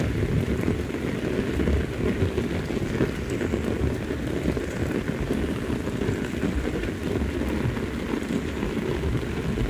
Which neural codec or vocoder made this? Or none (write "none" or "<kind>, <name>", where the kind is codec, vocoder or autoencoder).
none